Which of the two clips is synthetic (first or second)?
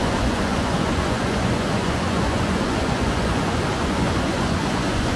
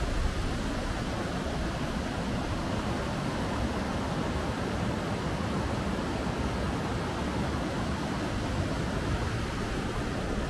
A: first